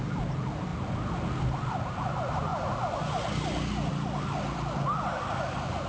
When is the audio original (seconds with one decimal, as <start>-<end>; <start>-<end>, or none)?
0.0-5.9